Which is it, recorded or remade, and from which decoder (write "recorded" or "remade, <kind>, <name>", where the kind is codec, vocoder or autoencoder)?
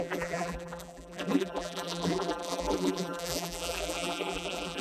remade, vocoder, BigVGAN v2